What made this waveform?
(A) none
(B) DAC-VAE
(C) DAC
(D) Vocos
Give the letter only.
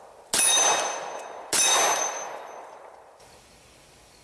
A